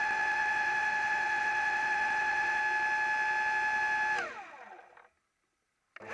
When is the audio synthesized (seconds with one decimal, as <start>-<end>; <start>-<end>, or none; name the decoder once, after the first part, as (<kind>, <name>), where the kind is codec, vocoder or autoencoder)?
0.0-2.6 (vocoder, WaveNeXt)